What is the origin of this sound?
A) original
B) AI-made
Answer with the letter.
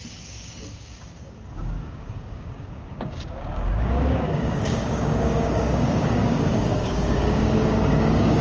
B